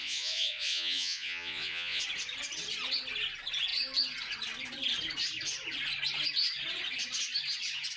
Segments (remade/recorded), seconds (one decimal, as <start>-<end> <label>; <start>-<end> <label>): 0.0-2.0 remade; 2.0-8.0 recorded

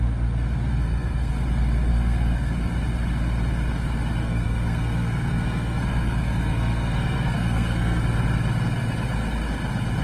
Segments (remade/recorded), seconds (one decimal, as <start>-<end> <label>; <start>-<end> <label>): 0.0-0.7 recorded; 0.7-1.3 remade; 1.3-1.9 recorded; 1.9-2.5 remade; 2.5-4.2 recorded; 4.2-8.0 remade; 8.0-10.0 recorded

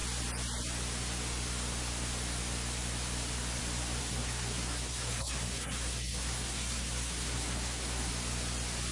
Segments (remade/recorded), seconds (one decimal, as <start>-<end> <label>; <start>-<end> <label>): 0.0-4.0 recorded; 4.0-8.1 remade; 8.1-8.9 recorded

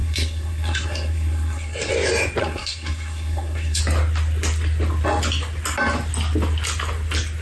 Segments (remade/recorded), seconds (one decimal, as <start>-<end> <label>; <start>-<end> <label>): 0.0-1.9 remade; 1.9-2.4 recorded; 2.4-3.8 remade; 3.8-7.4 recorded

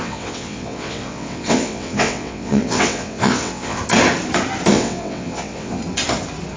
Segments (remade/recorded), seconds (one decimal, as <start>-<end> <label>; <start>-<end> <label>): 0.0-3.8 remade; 3.8-4.7 recorded; 4.7-5.8 remade; 5.8-6.6 recorded

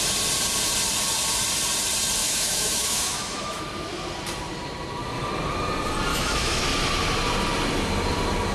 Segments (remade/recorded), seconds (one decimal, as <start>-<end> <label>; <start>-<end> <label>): 0.0-2.2 recorded; 2.2-3.6 remade; 3.6-6.1 recorded; 6.1-6.6 remade; 6.6-8.5 recorded